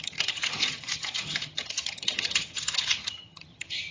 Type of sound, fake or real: fake